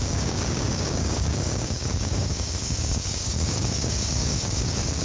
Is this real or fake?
fake